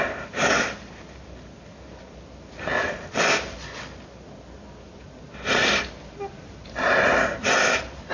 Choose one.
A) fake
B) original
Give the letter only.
B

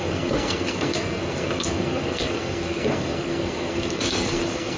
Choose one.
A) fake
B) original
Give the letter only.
A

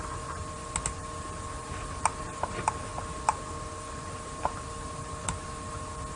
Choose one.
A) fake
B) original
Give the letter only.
B